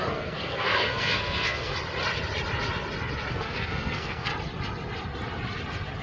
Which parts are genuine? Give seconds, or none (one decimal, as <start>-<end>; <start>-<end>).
1.7-3.3; 4.3-6.0